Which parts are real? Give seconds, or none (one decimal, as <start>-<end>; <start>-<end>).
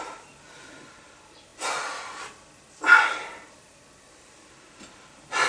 0.0-5.5